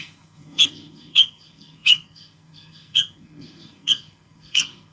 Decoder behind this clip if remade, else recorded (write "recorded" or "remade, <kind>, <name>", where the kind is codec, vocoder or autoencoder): remade, codec, SNAC